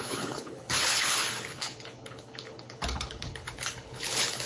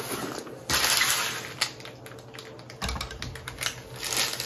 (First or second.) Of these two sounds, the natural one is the second